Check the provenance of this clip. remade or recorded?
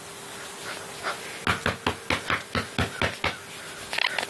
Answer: recorded